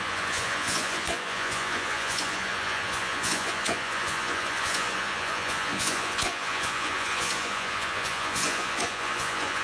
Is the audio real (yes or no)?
no